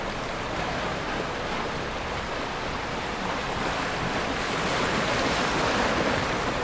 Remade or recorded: recorded